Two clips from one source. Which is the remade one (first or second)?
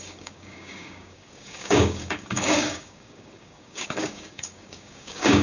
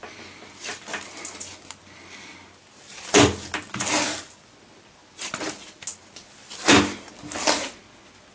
first